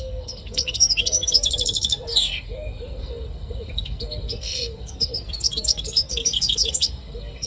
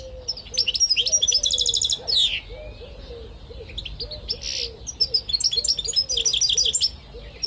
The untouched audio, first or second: second